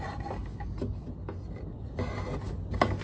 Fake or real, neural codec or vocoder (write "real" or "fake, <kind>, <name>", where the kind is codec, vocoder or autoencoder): real